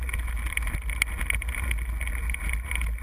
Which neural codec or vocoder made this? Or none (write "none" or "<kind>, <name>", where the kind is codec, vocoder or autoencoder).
none